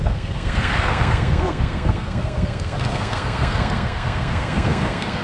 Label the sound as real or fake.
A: fake